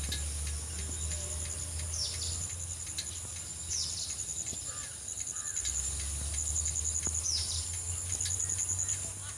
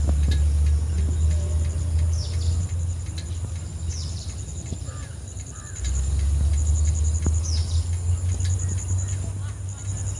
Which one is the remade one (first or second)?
second